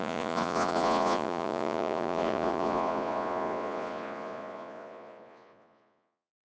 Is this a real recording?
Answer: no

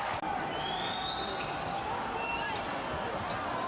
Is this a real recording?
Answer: yes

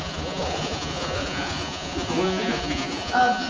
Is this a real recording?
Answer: no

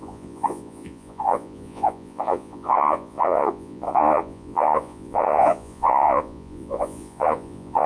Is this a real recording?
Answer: no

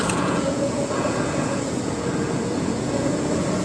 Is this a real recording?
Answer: no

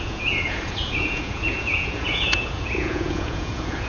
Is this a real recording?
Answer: no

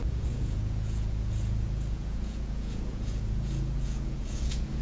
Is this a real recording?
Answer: no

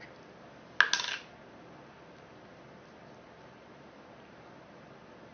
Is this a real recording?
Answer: yes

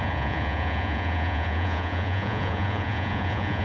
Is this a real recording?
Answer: no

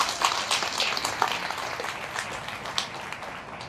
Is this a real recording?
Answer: yes